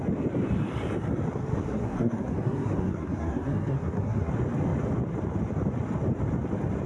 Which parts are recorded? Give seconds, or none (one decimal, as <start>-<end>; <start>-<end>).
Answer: 0.0-1.7; 4.3-6.9